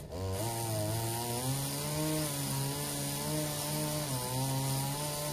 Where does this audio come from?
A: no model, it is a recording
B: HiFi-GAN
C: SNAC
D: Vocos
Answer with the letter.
A